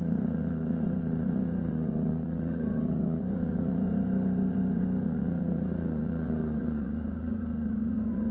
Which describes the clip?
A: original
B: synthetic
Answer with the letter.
B